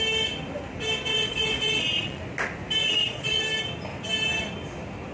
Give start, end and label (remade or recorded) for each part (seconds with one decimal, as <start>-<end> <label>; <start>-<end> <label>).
0.0-1.1 recorded; 1.1-2.2 remade; 2.2-2.8 recorded; 2.8-3.4 remade; 3.4-5.1 recorded